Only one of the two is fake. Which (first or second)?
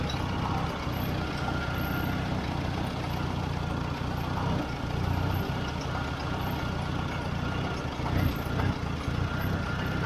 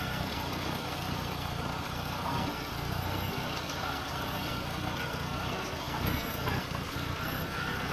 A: second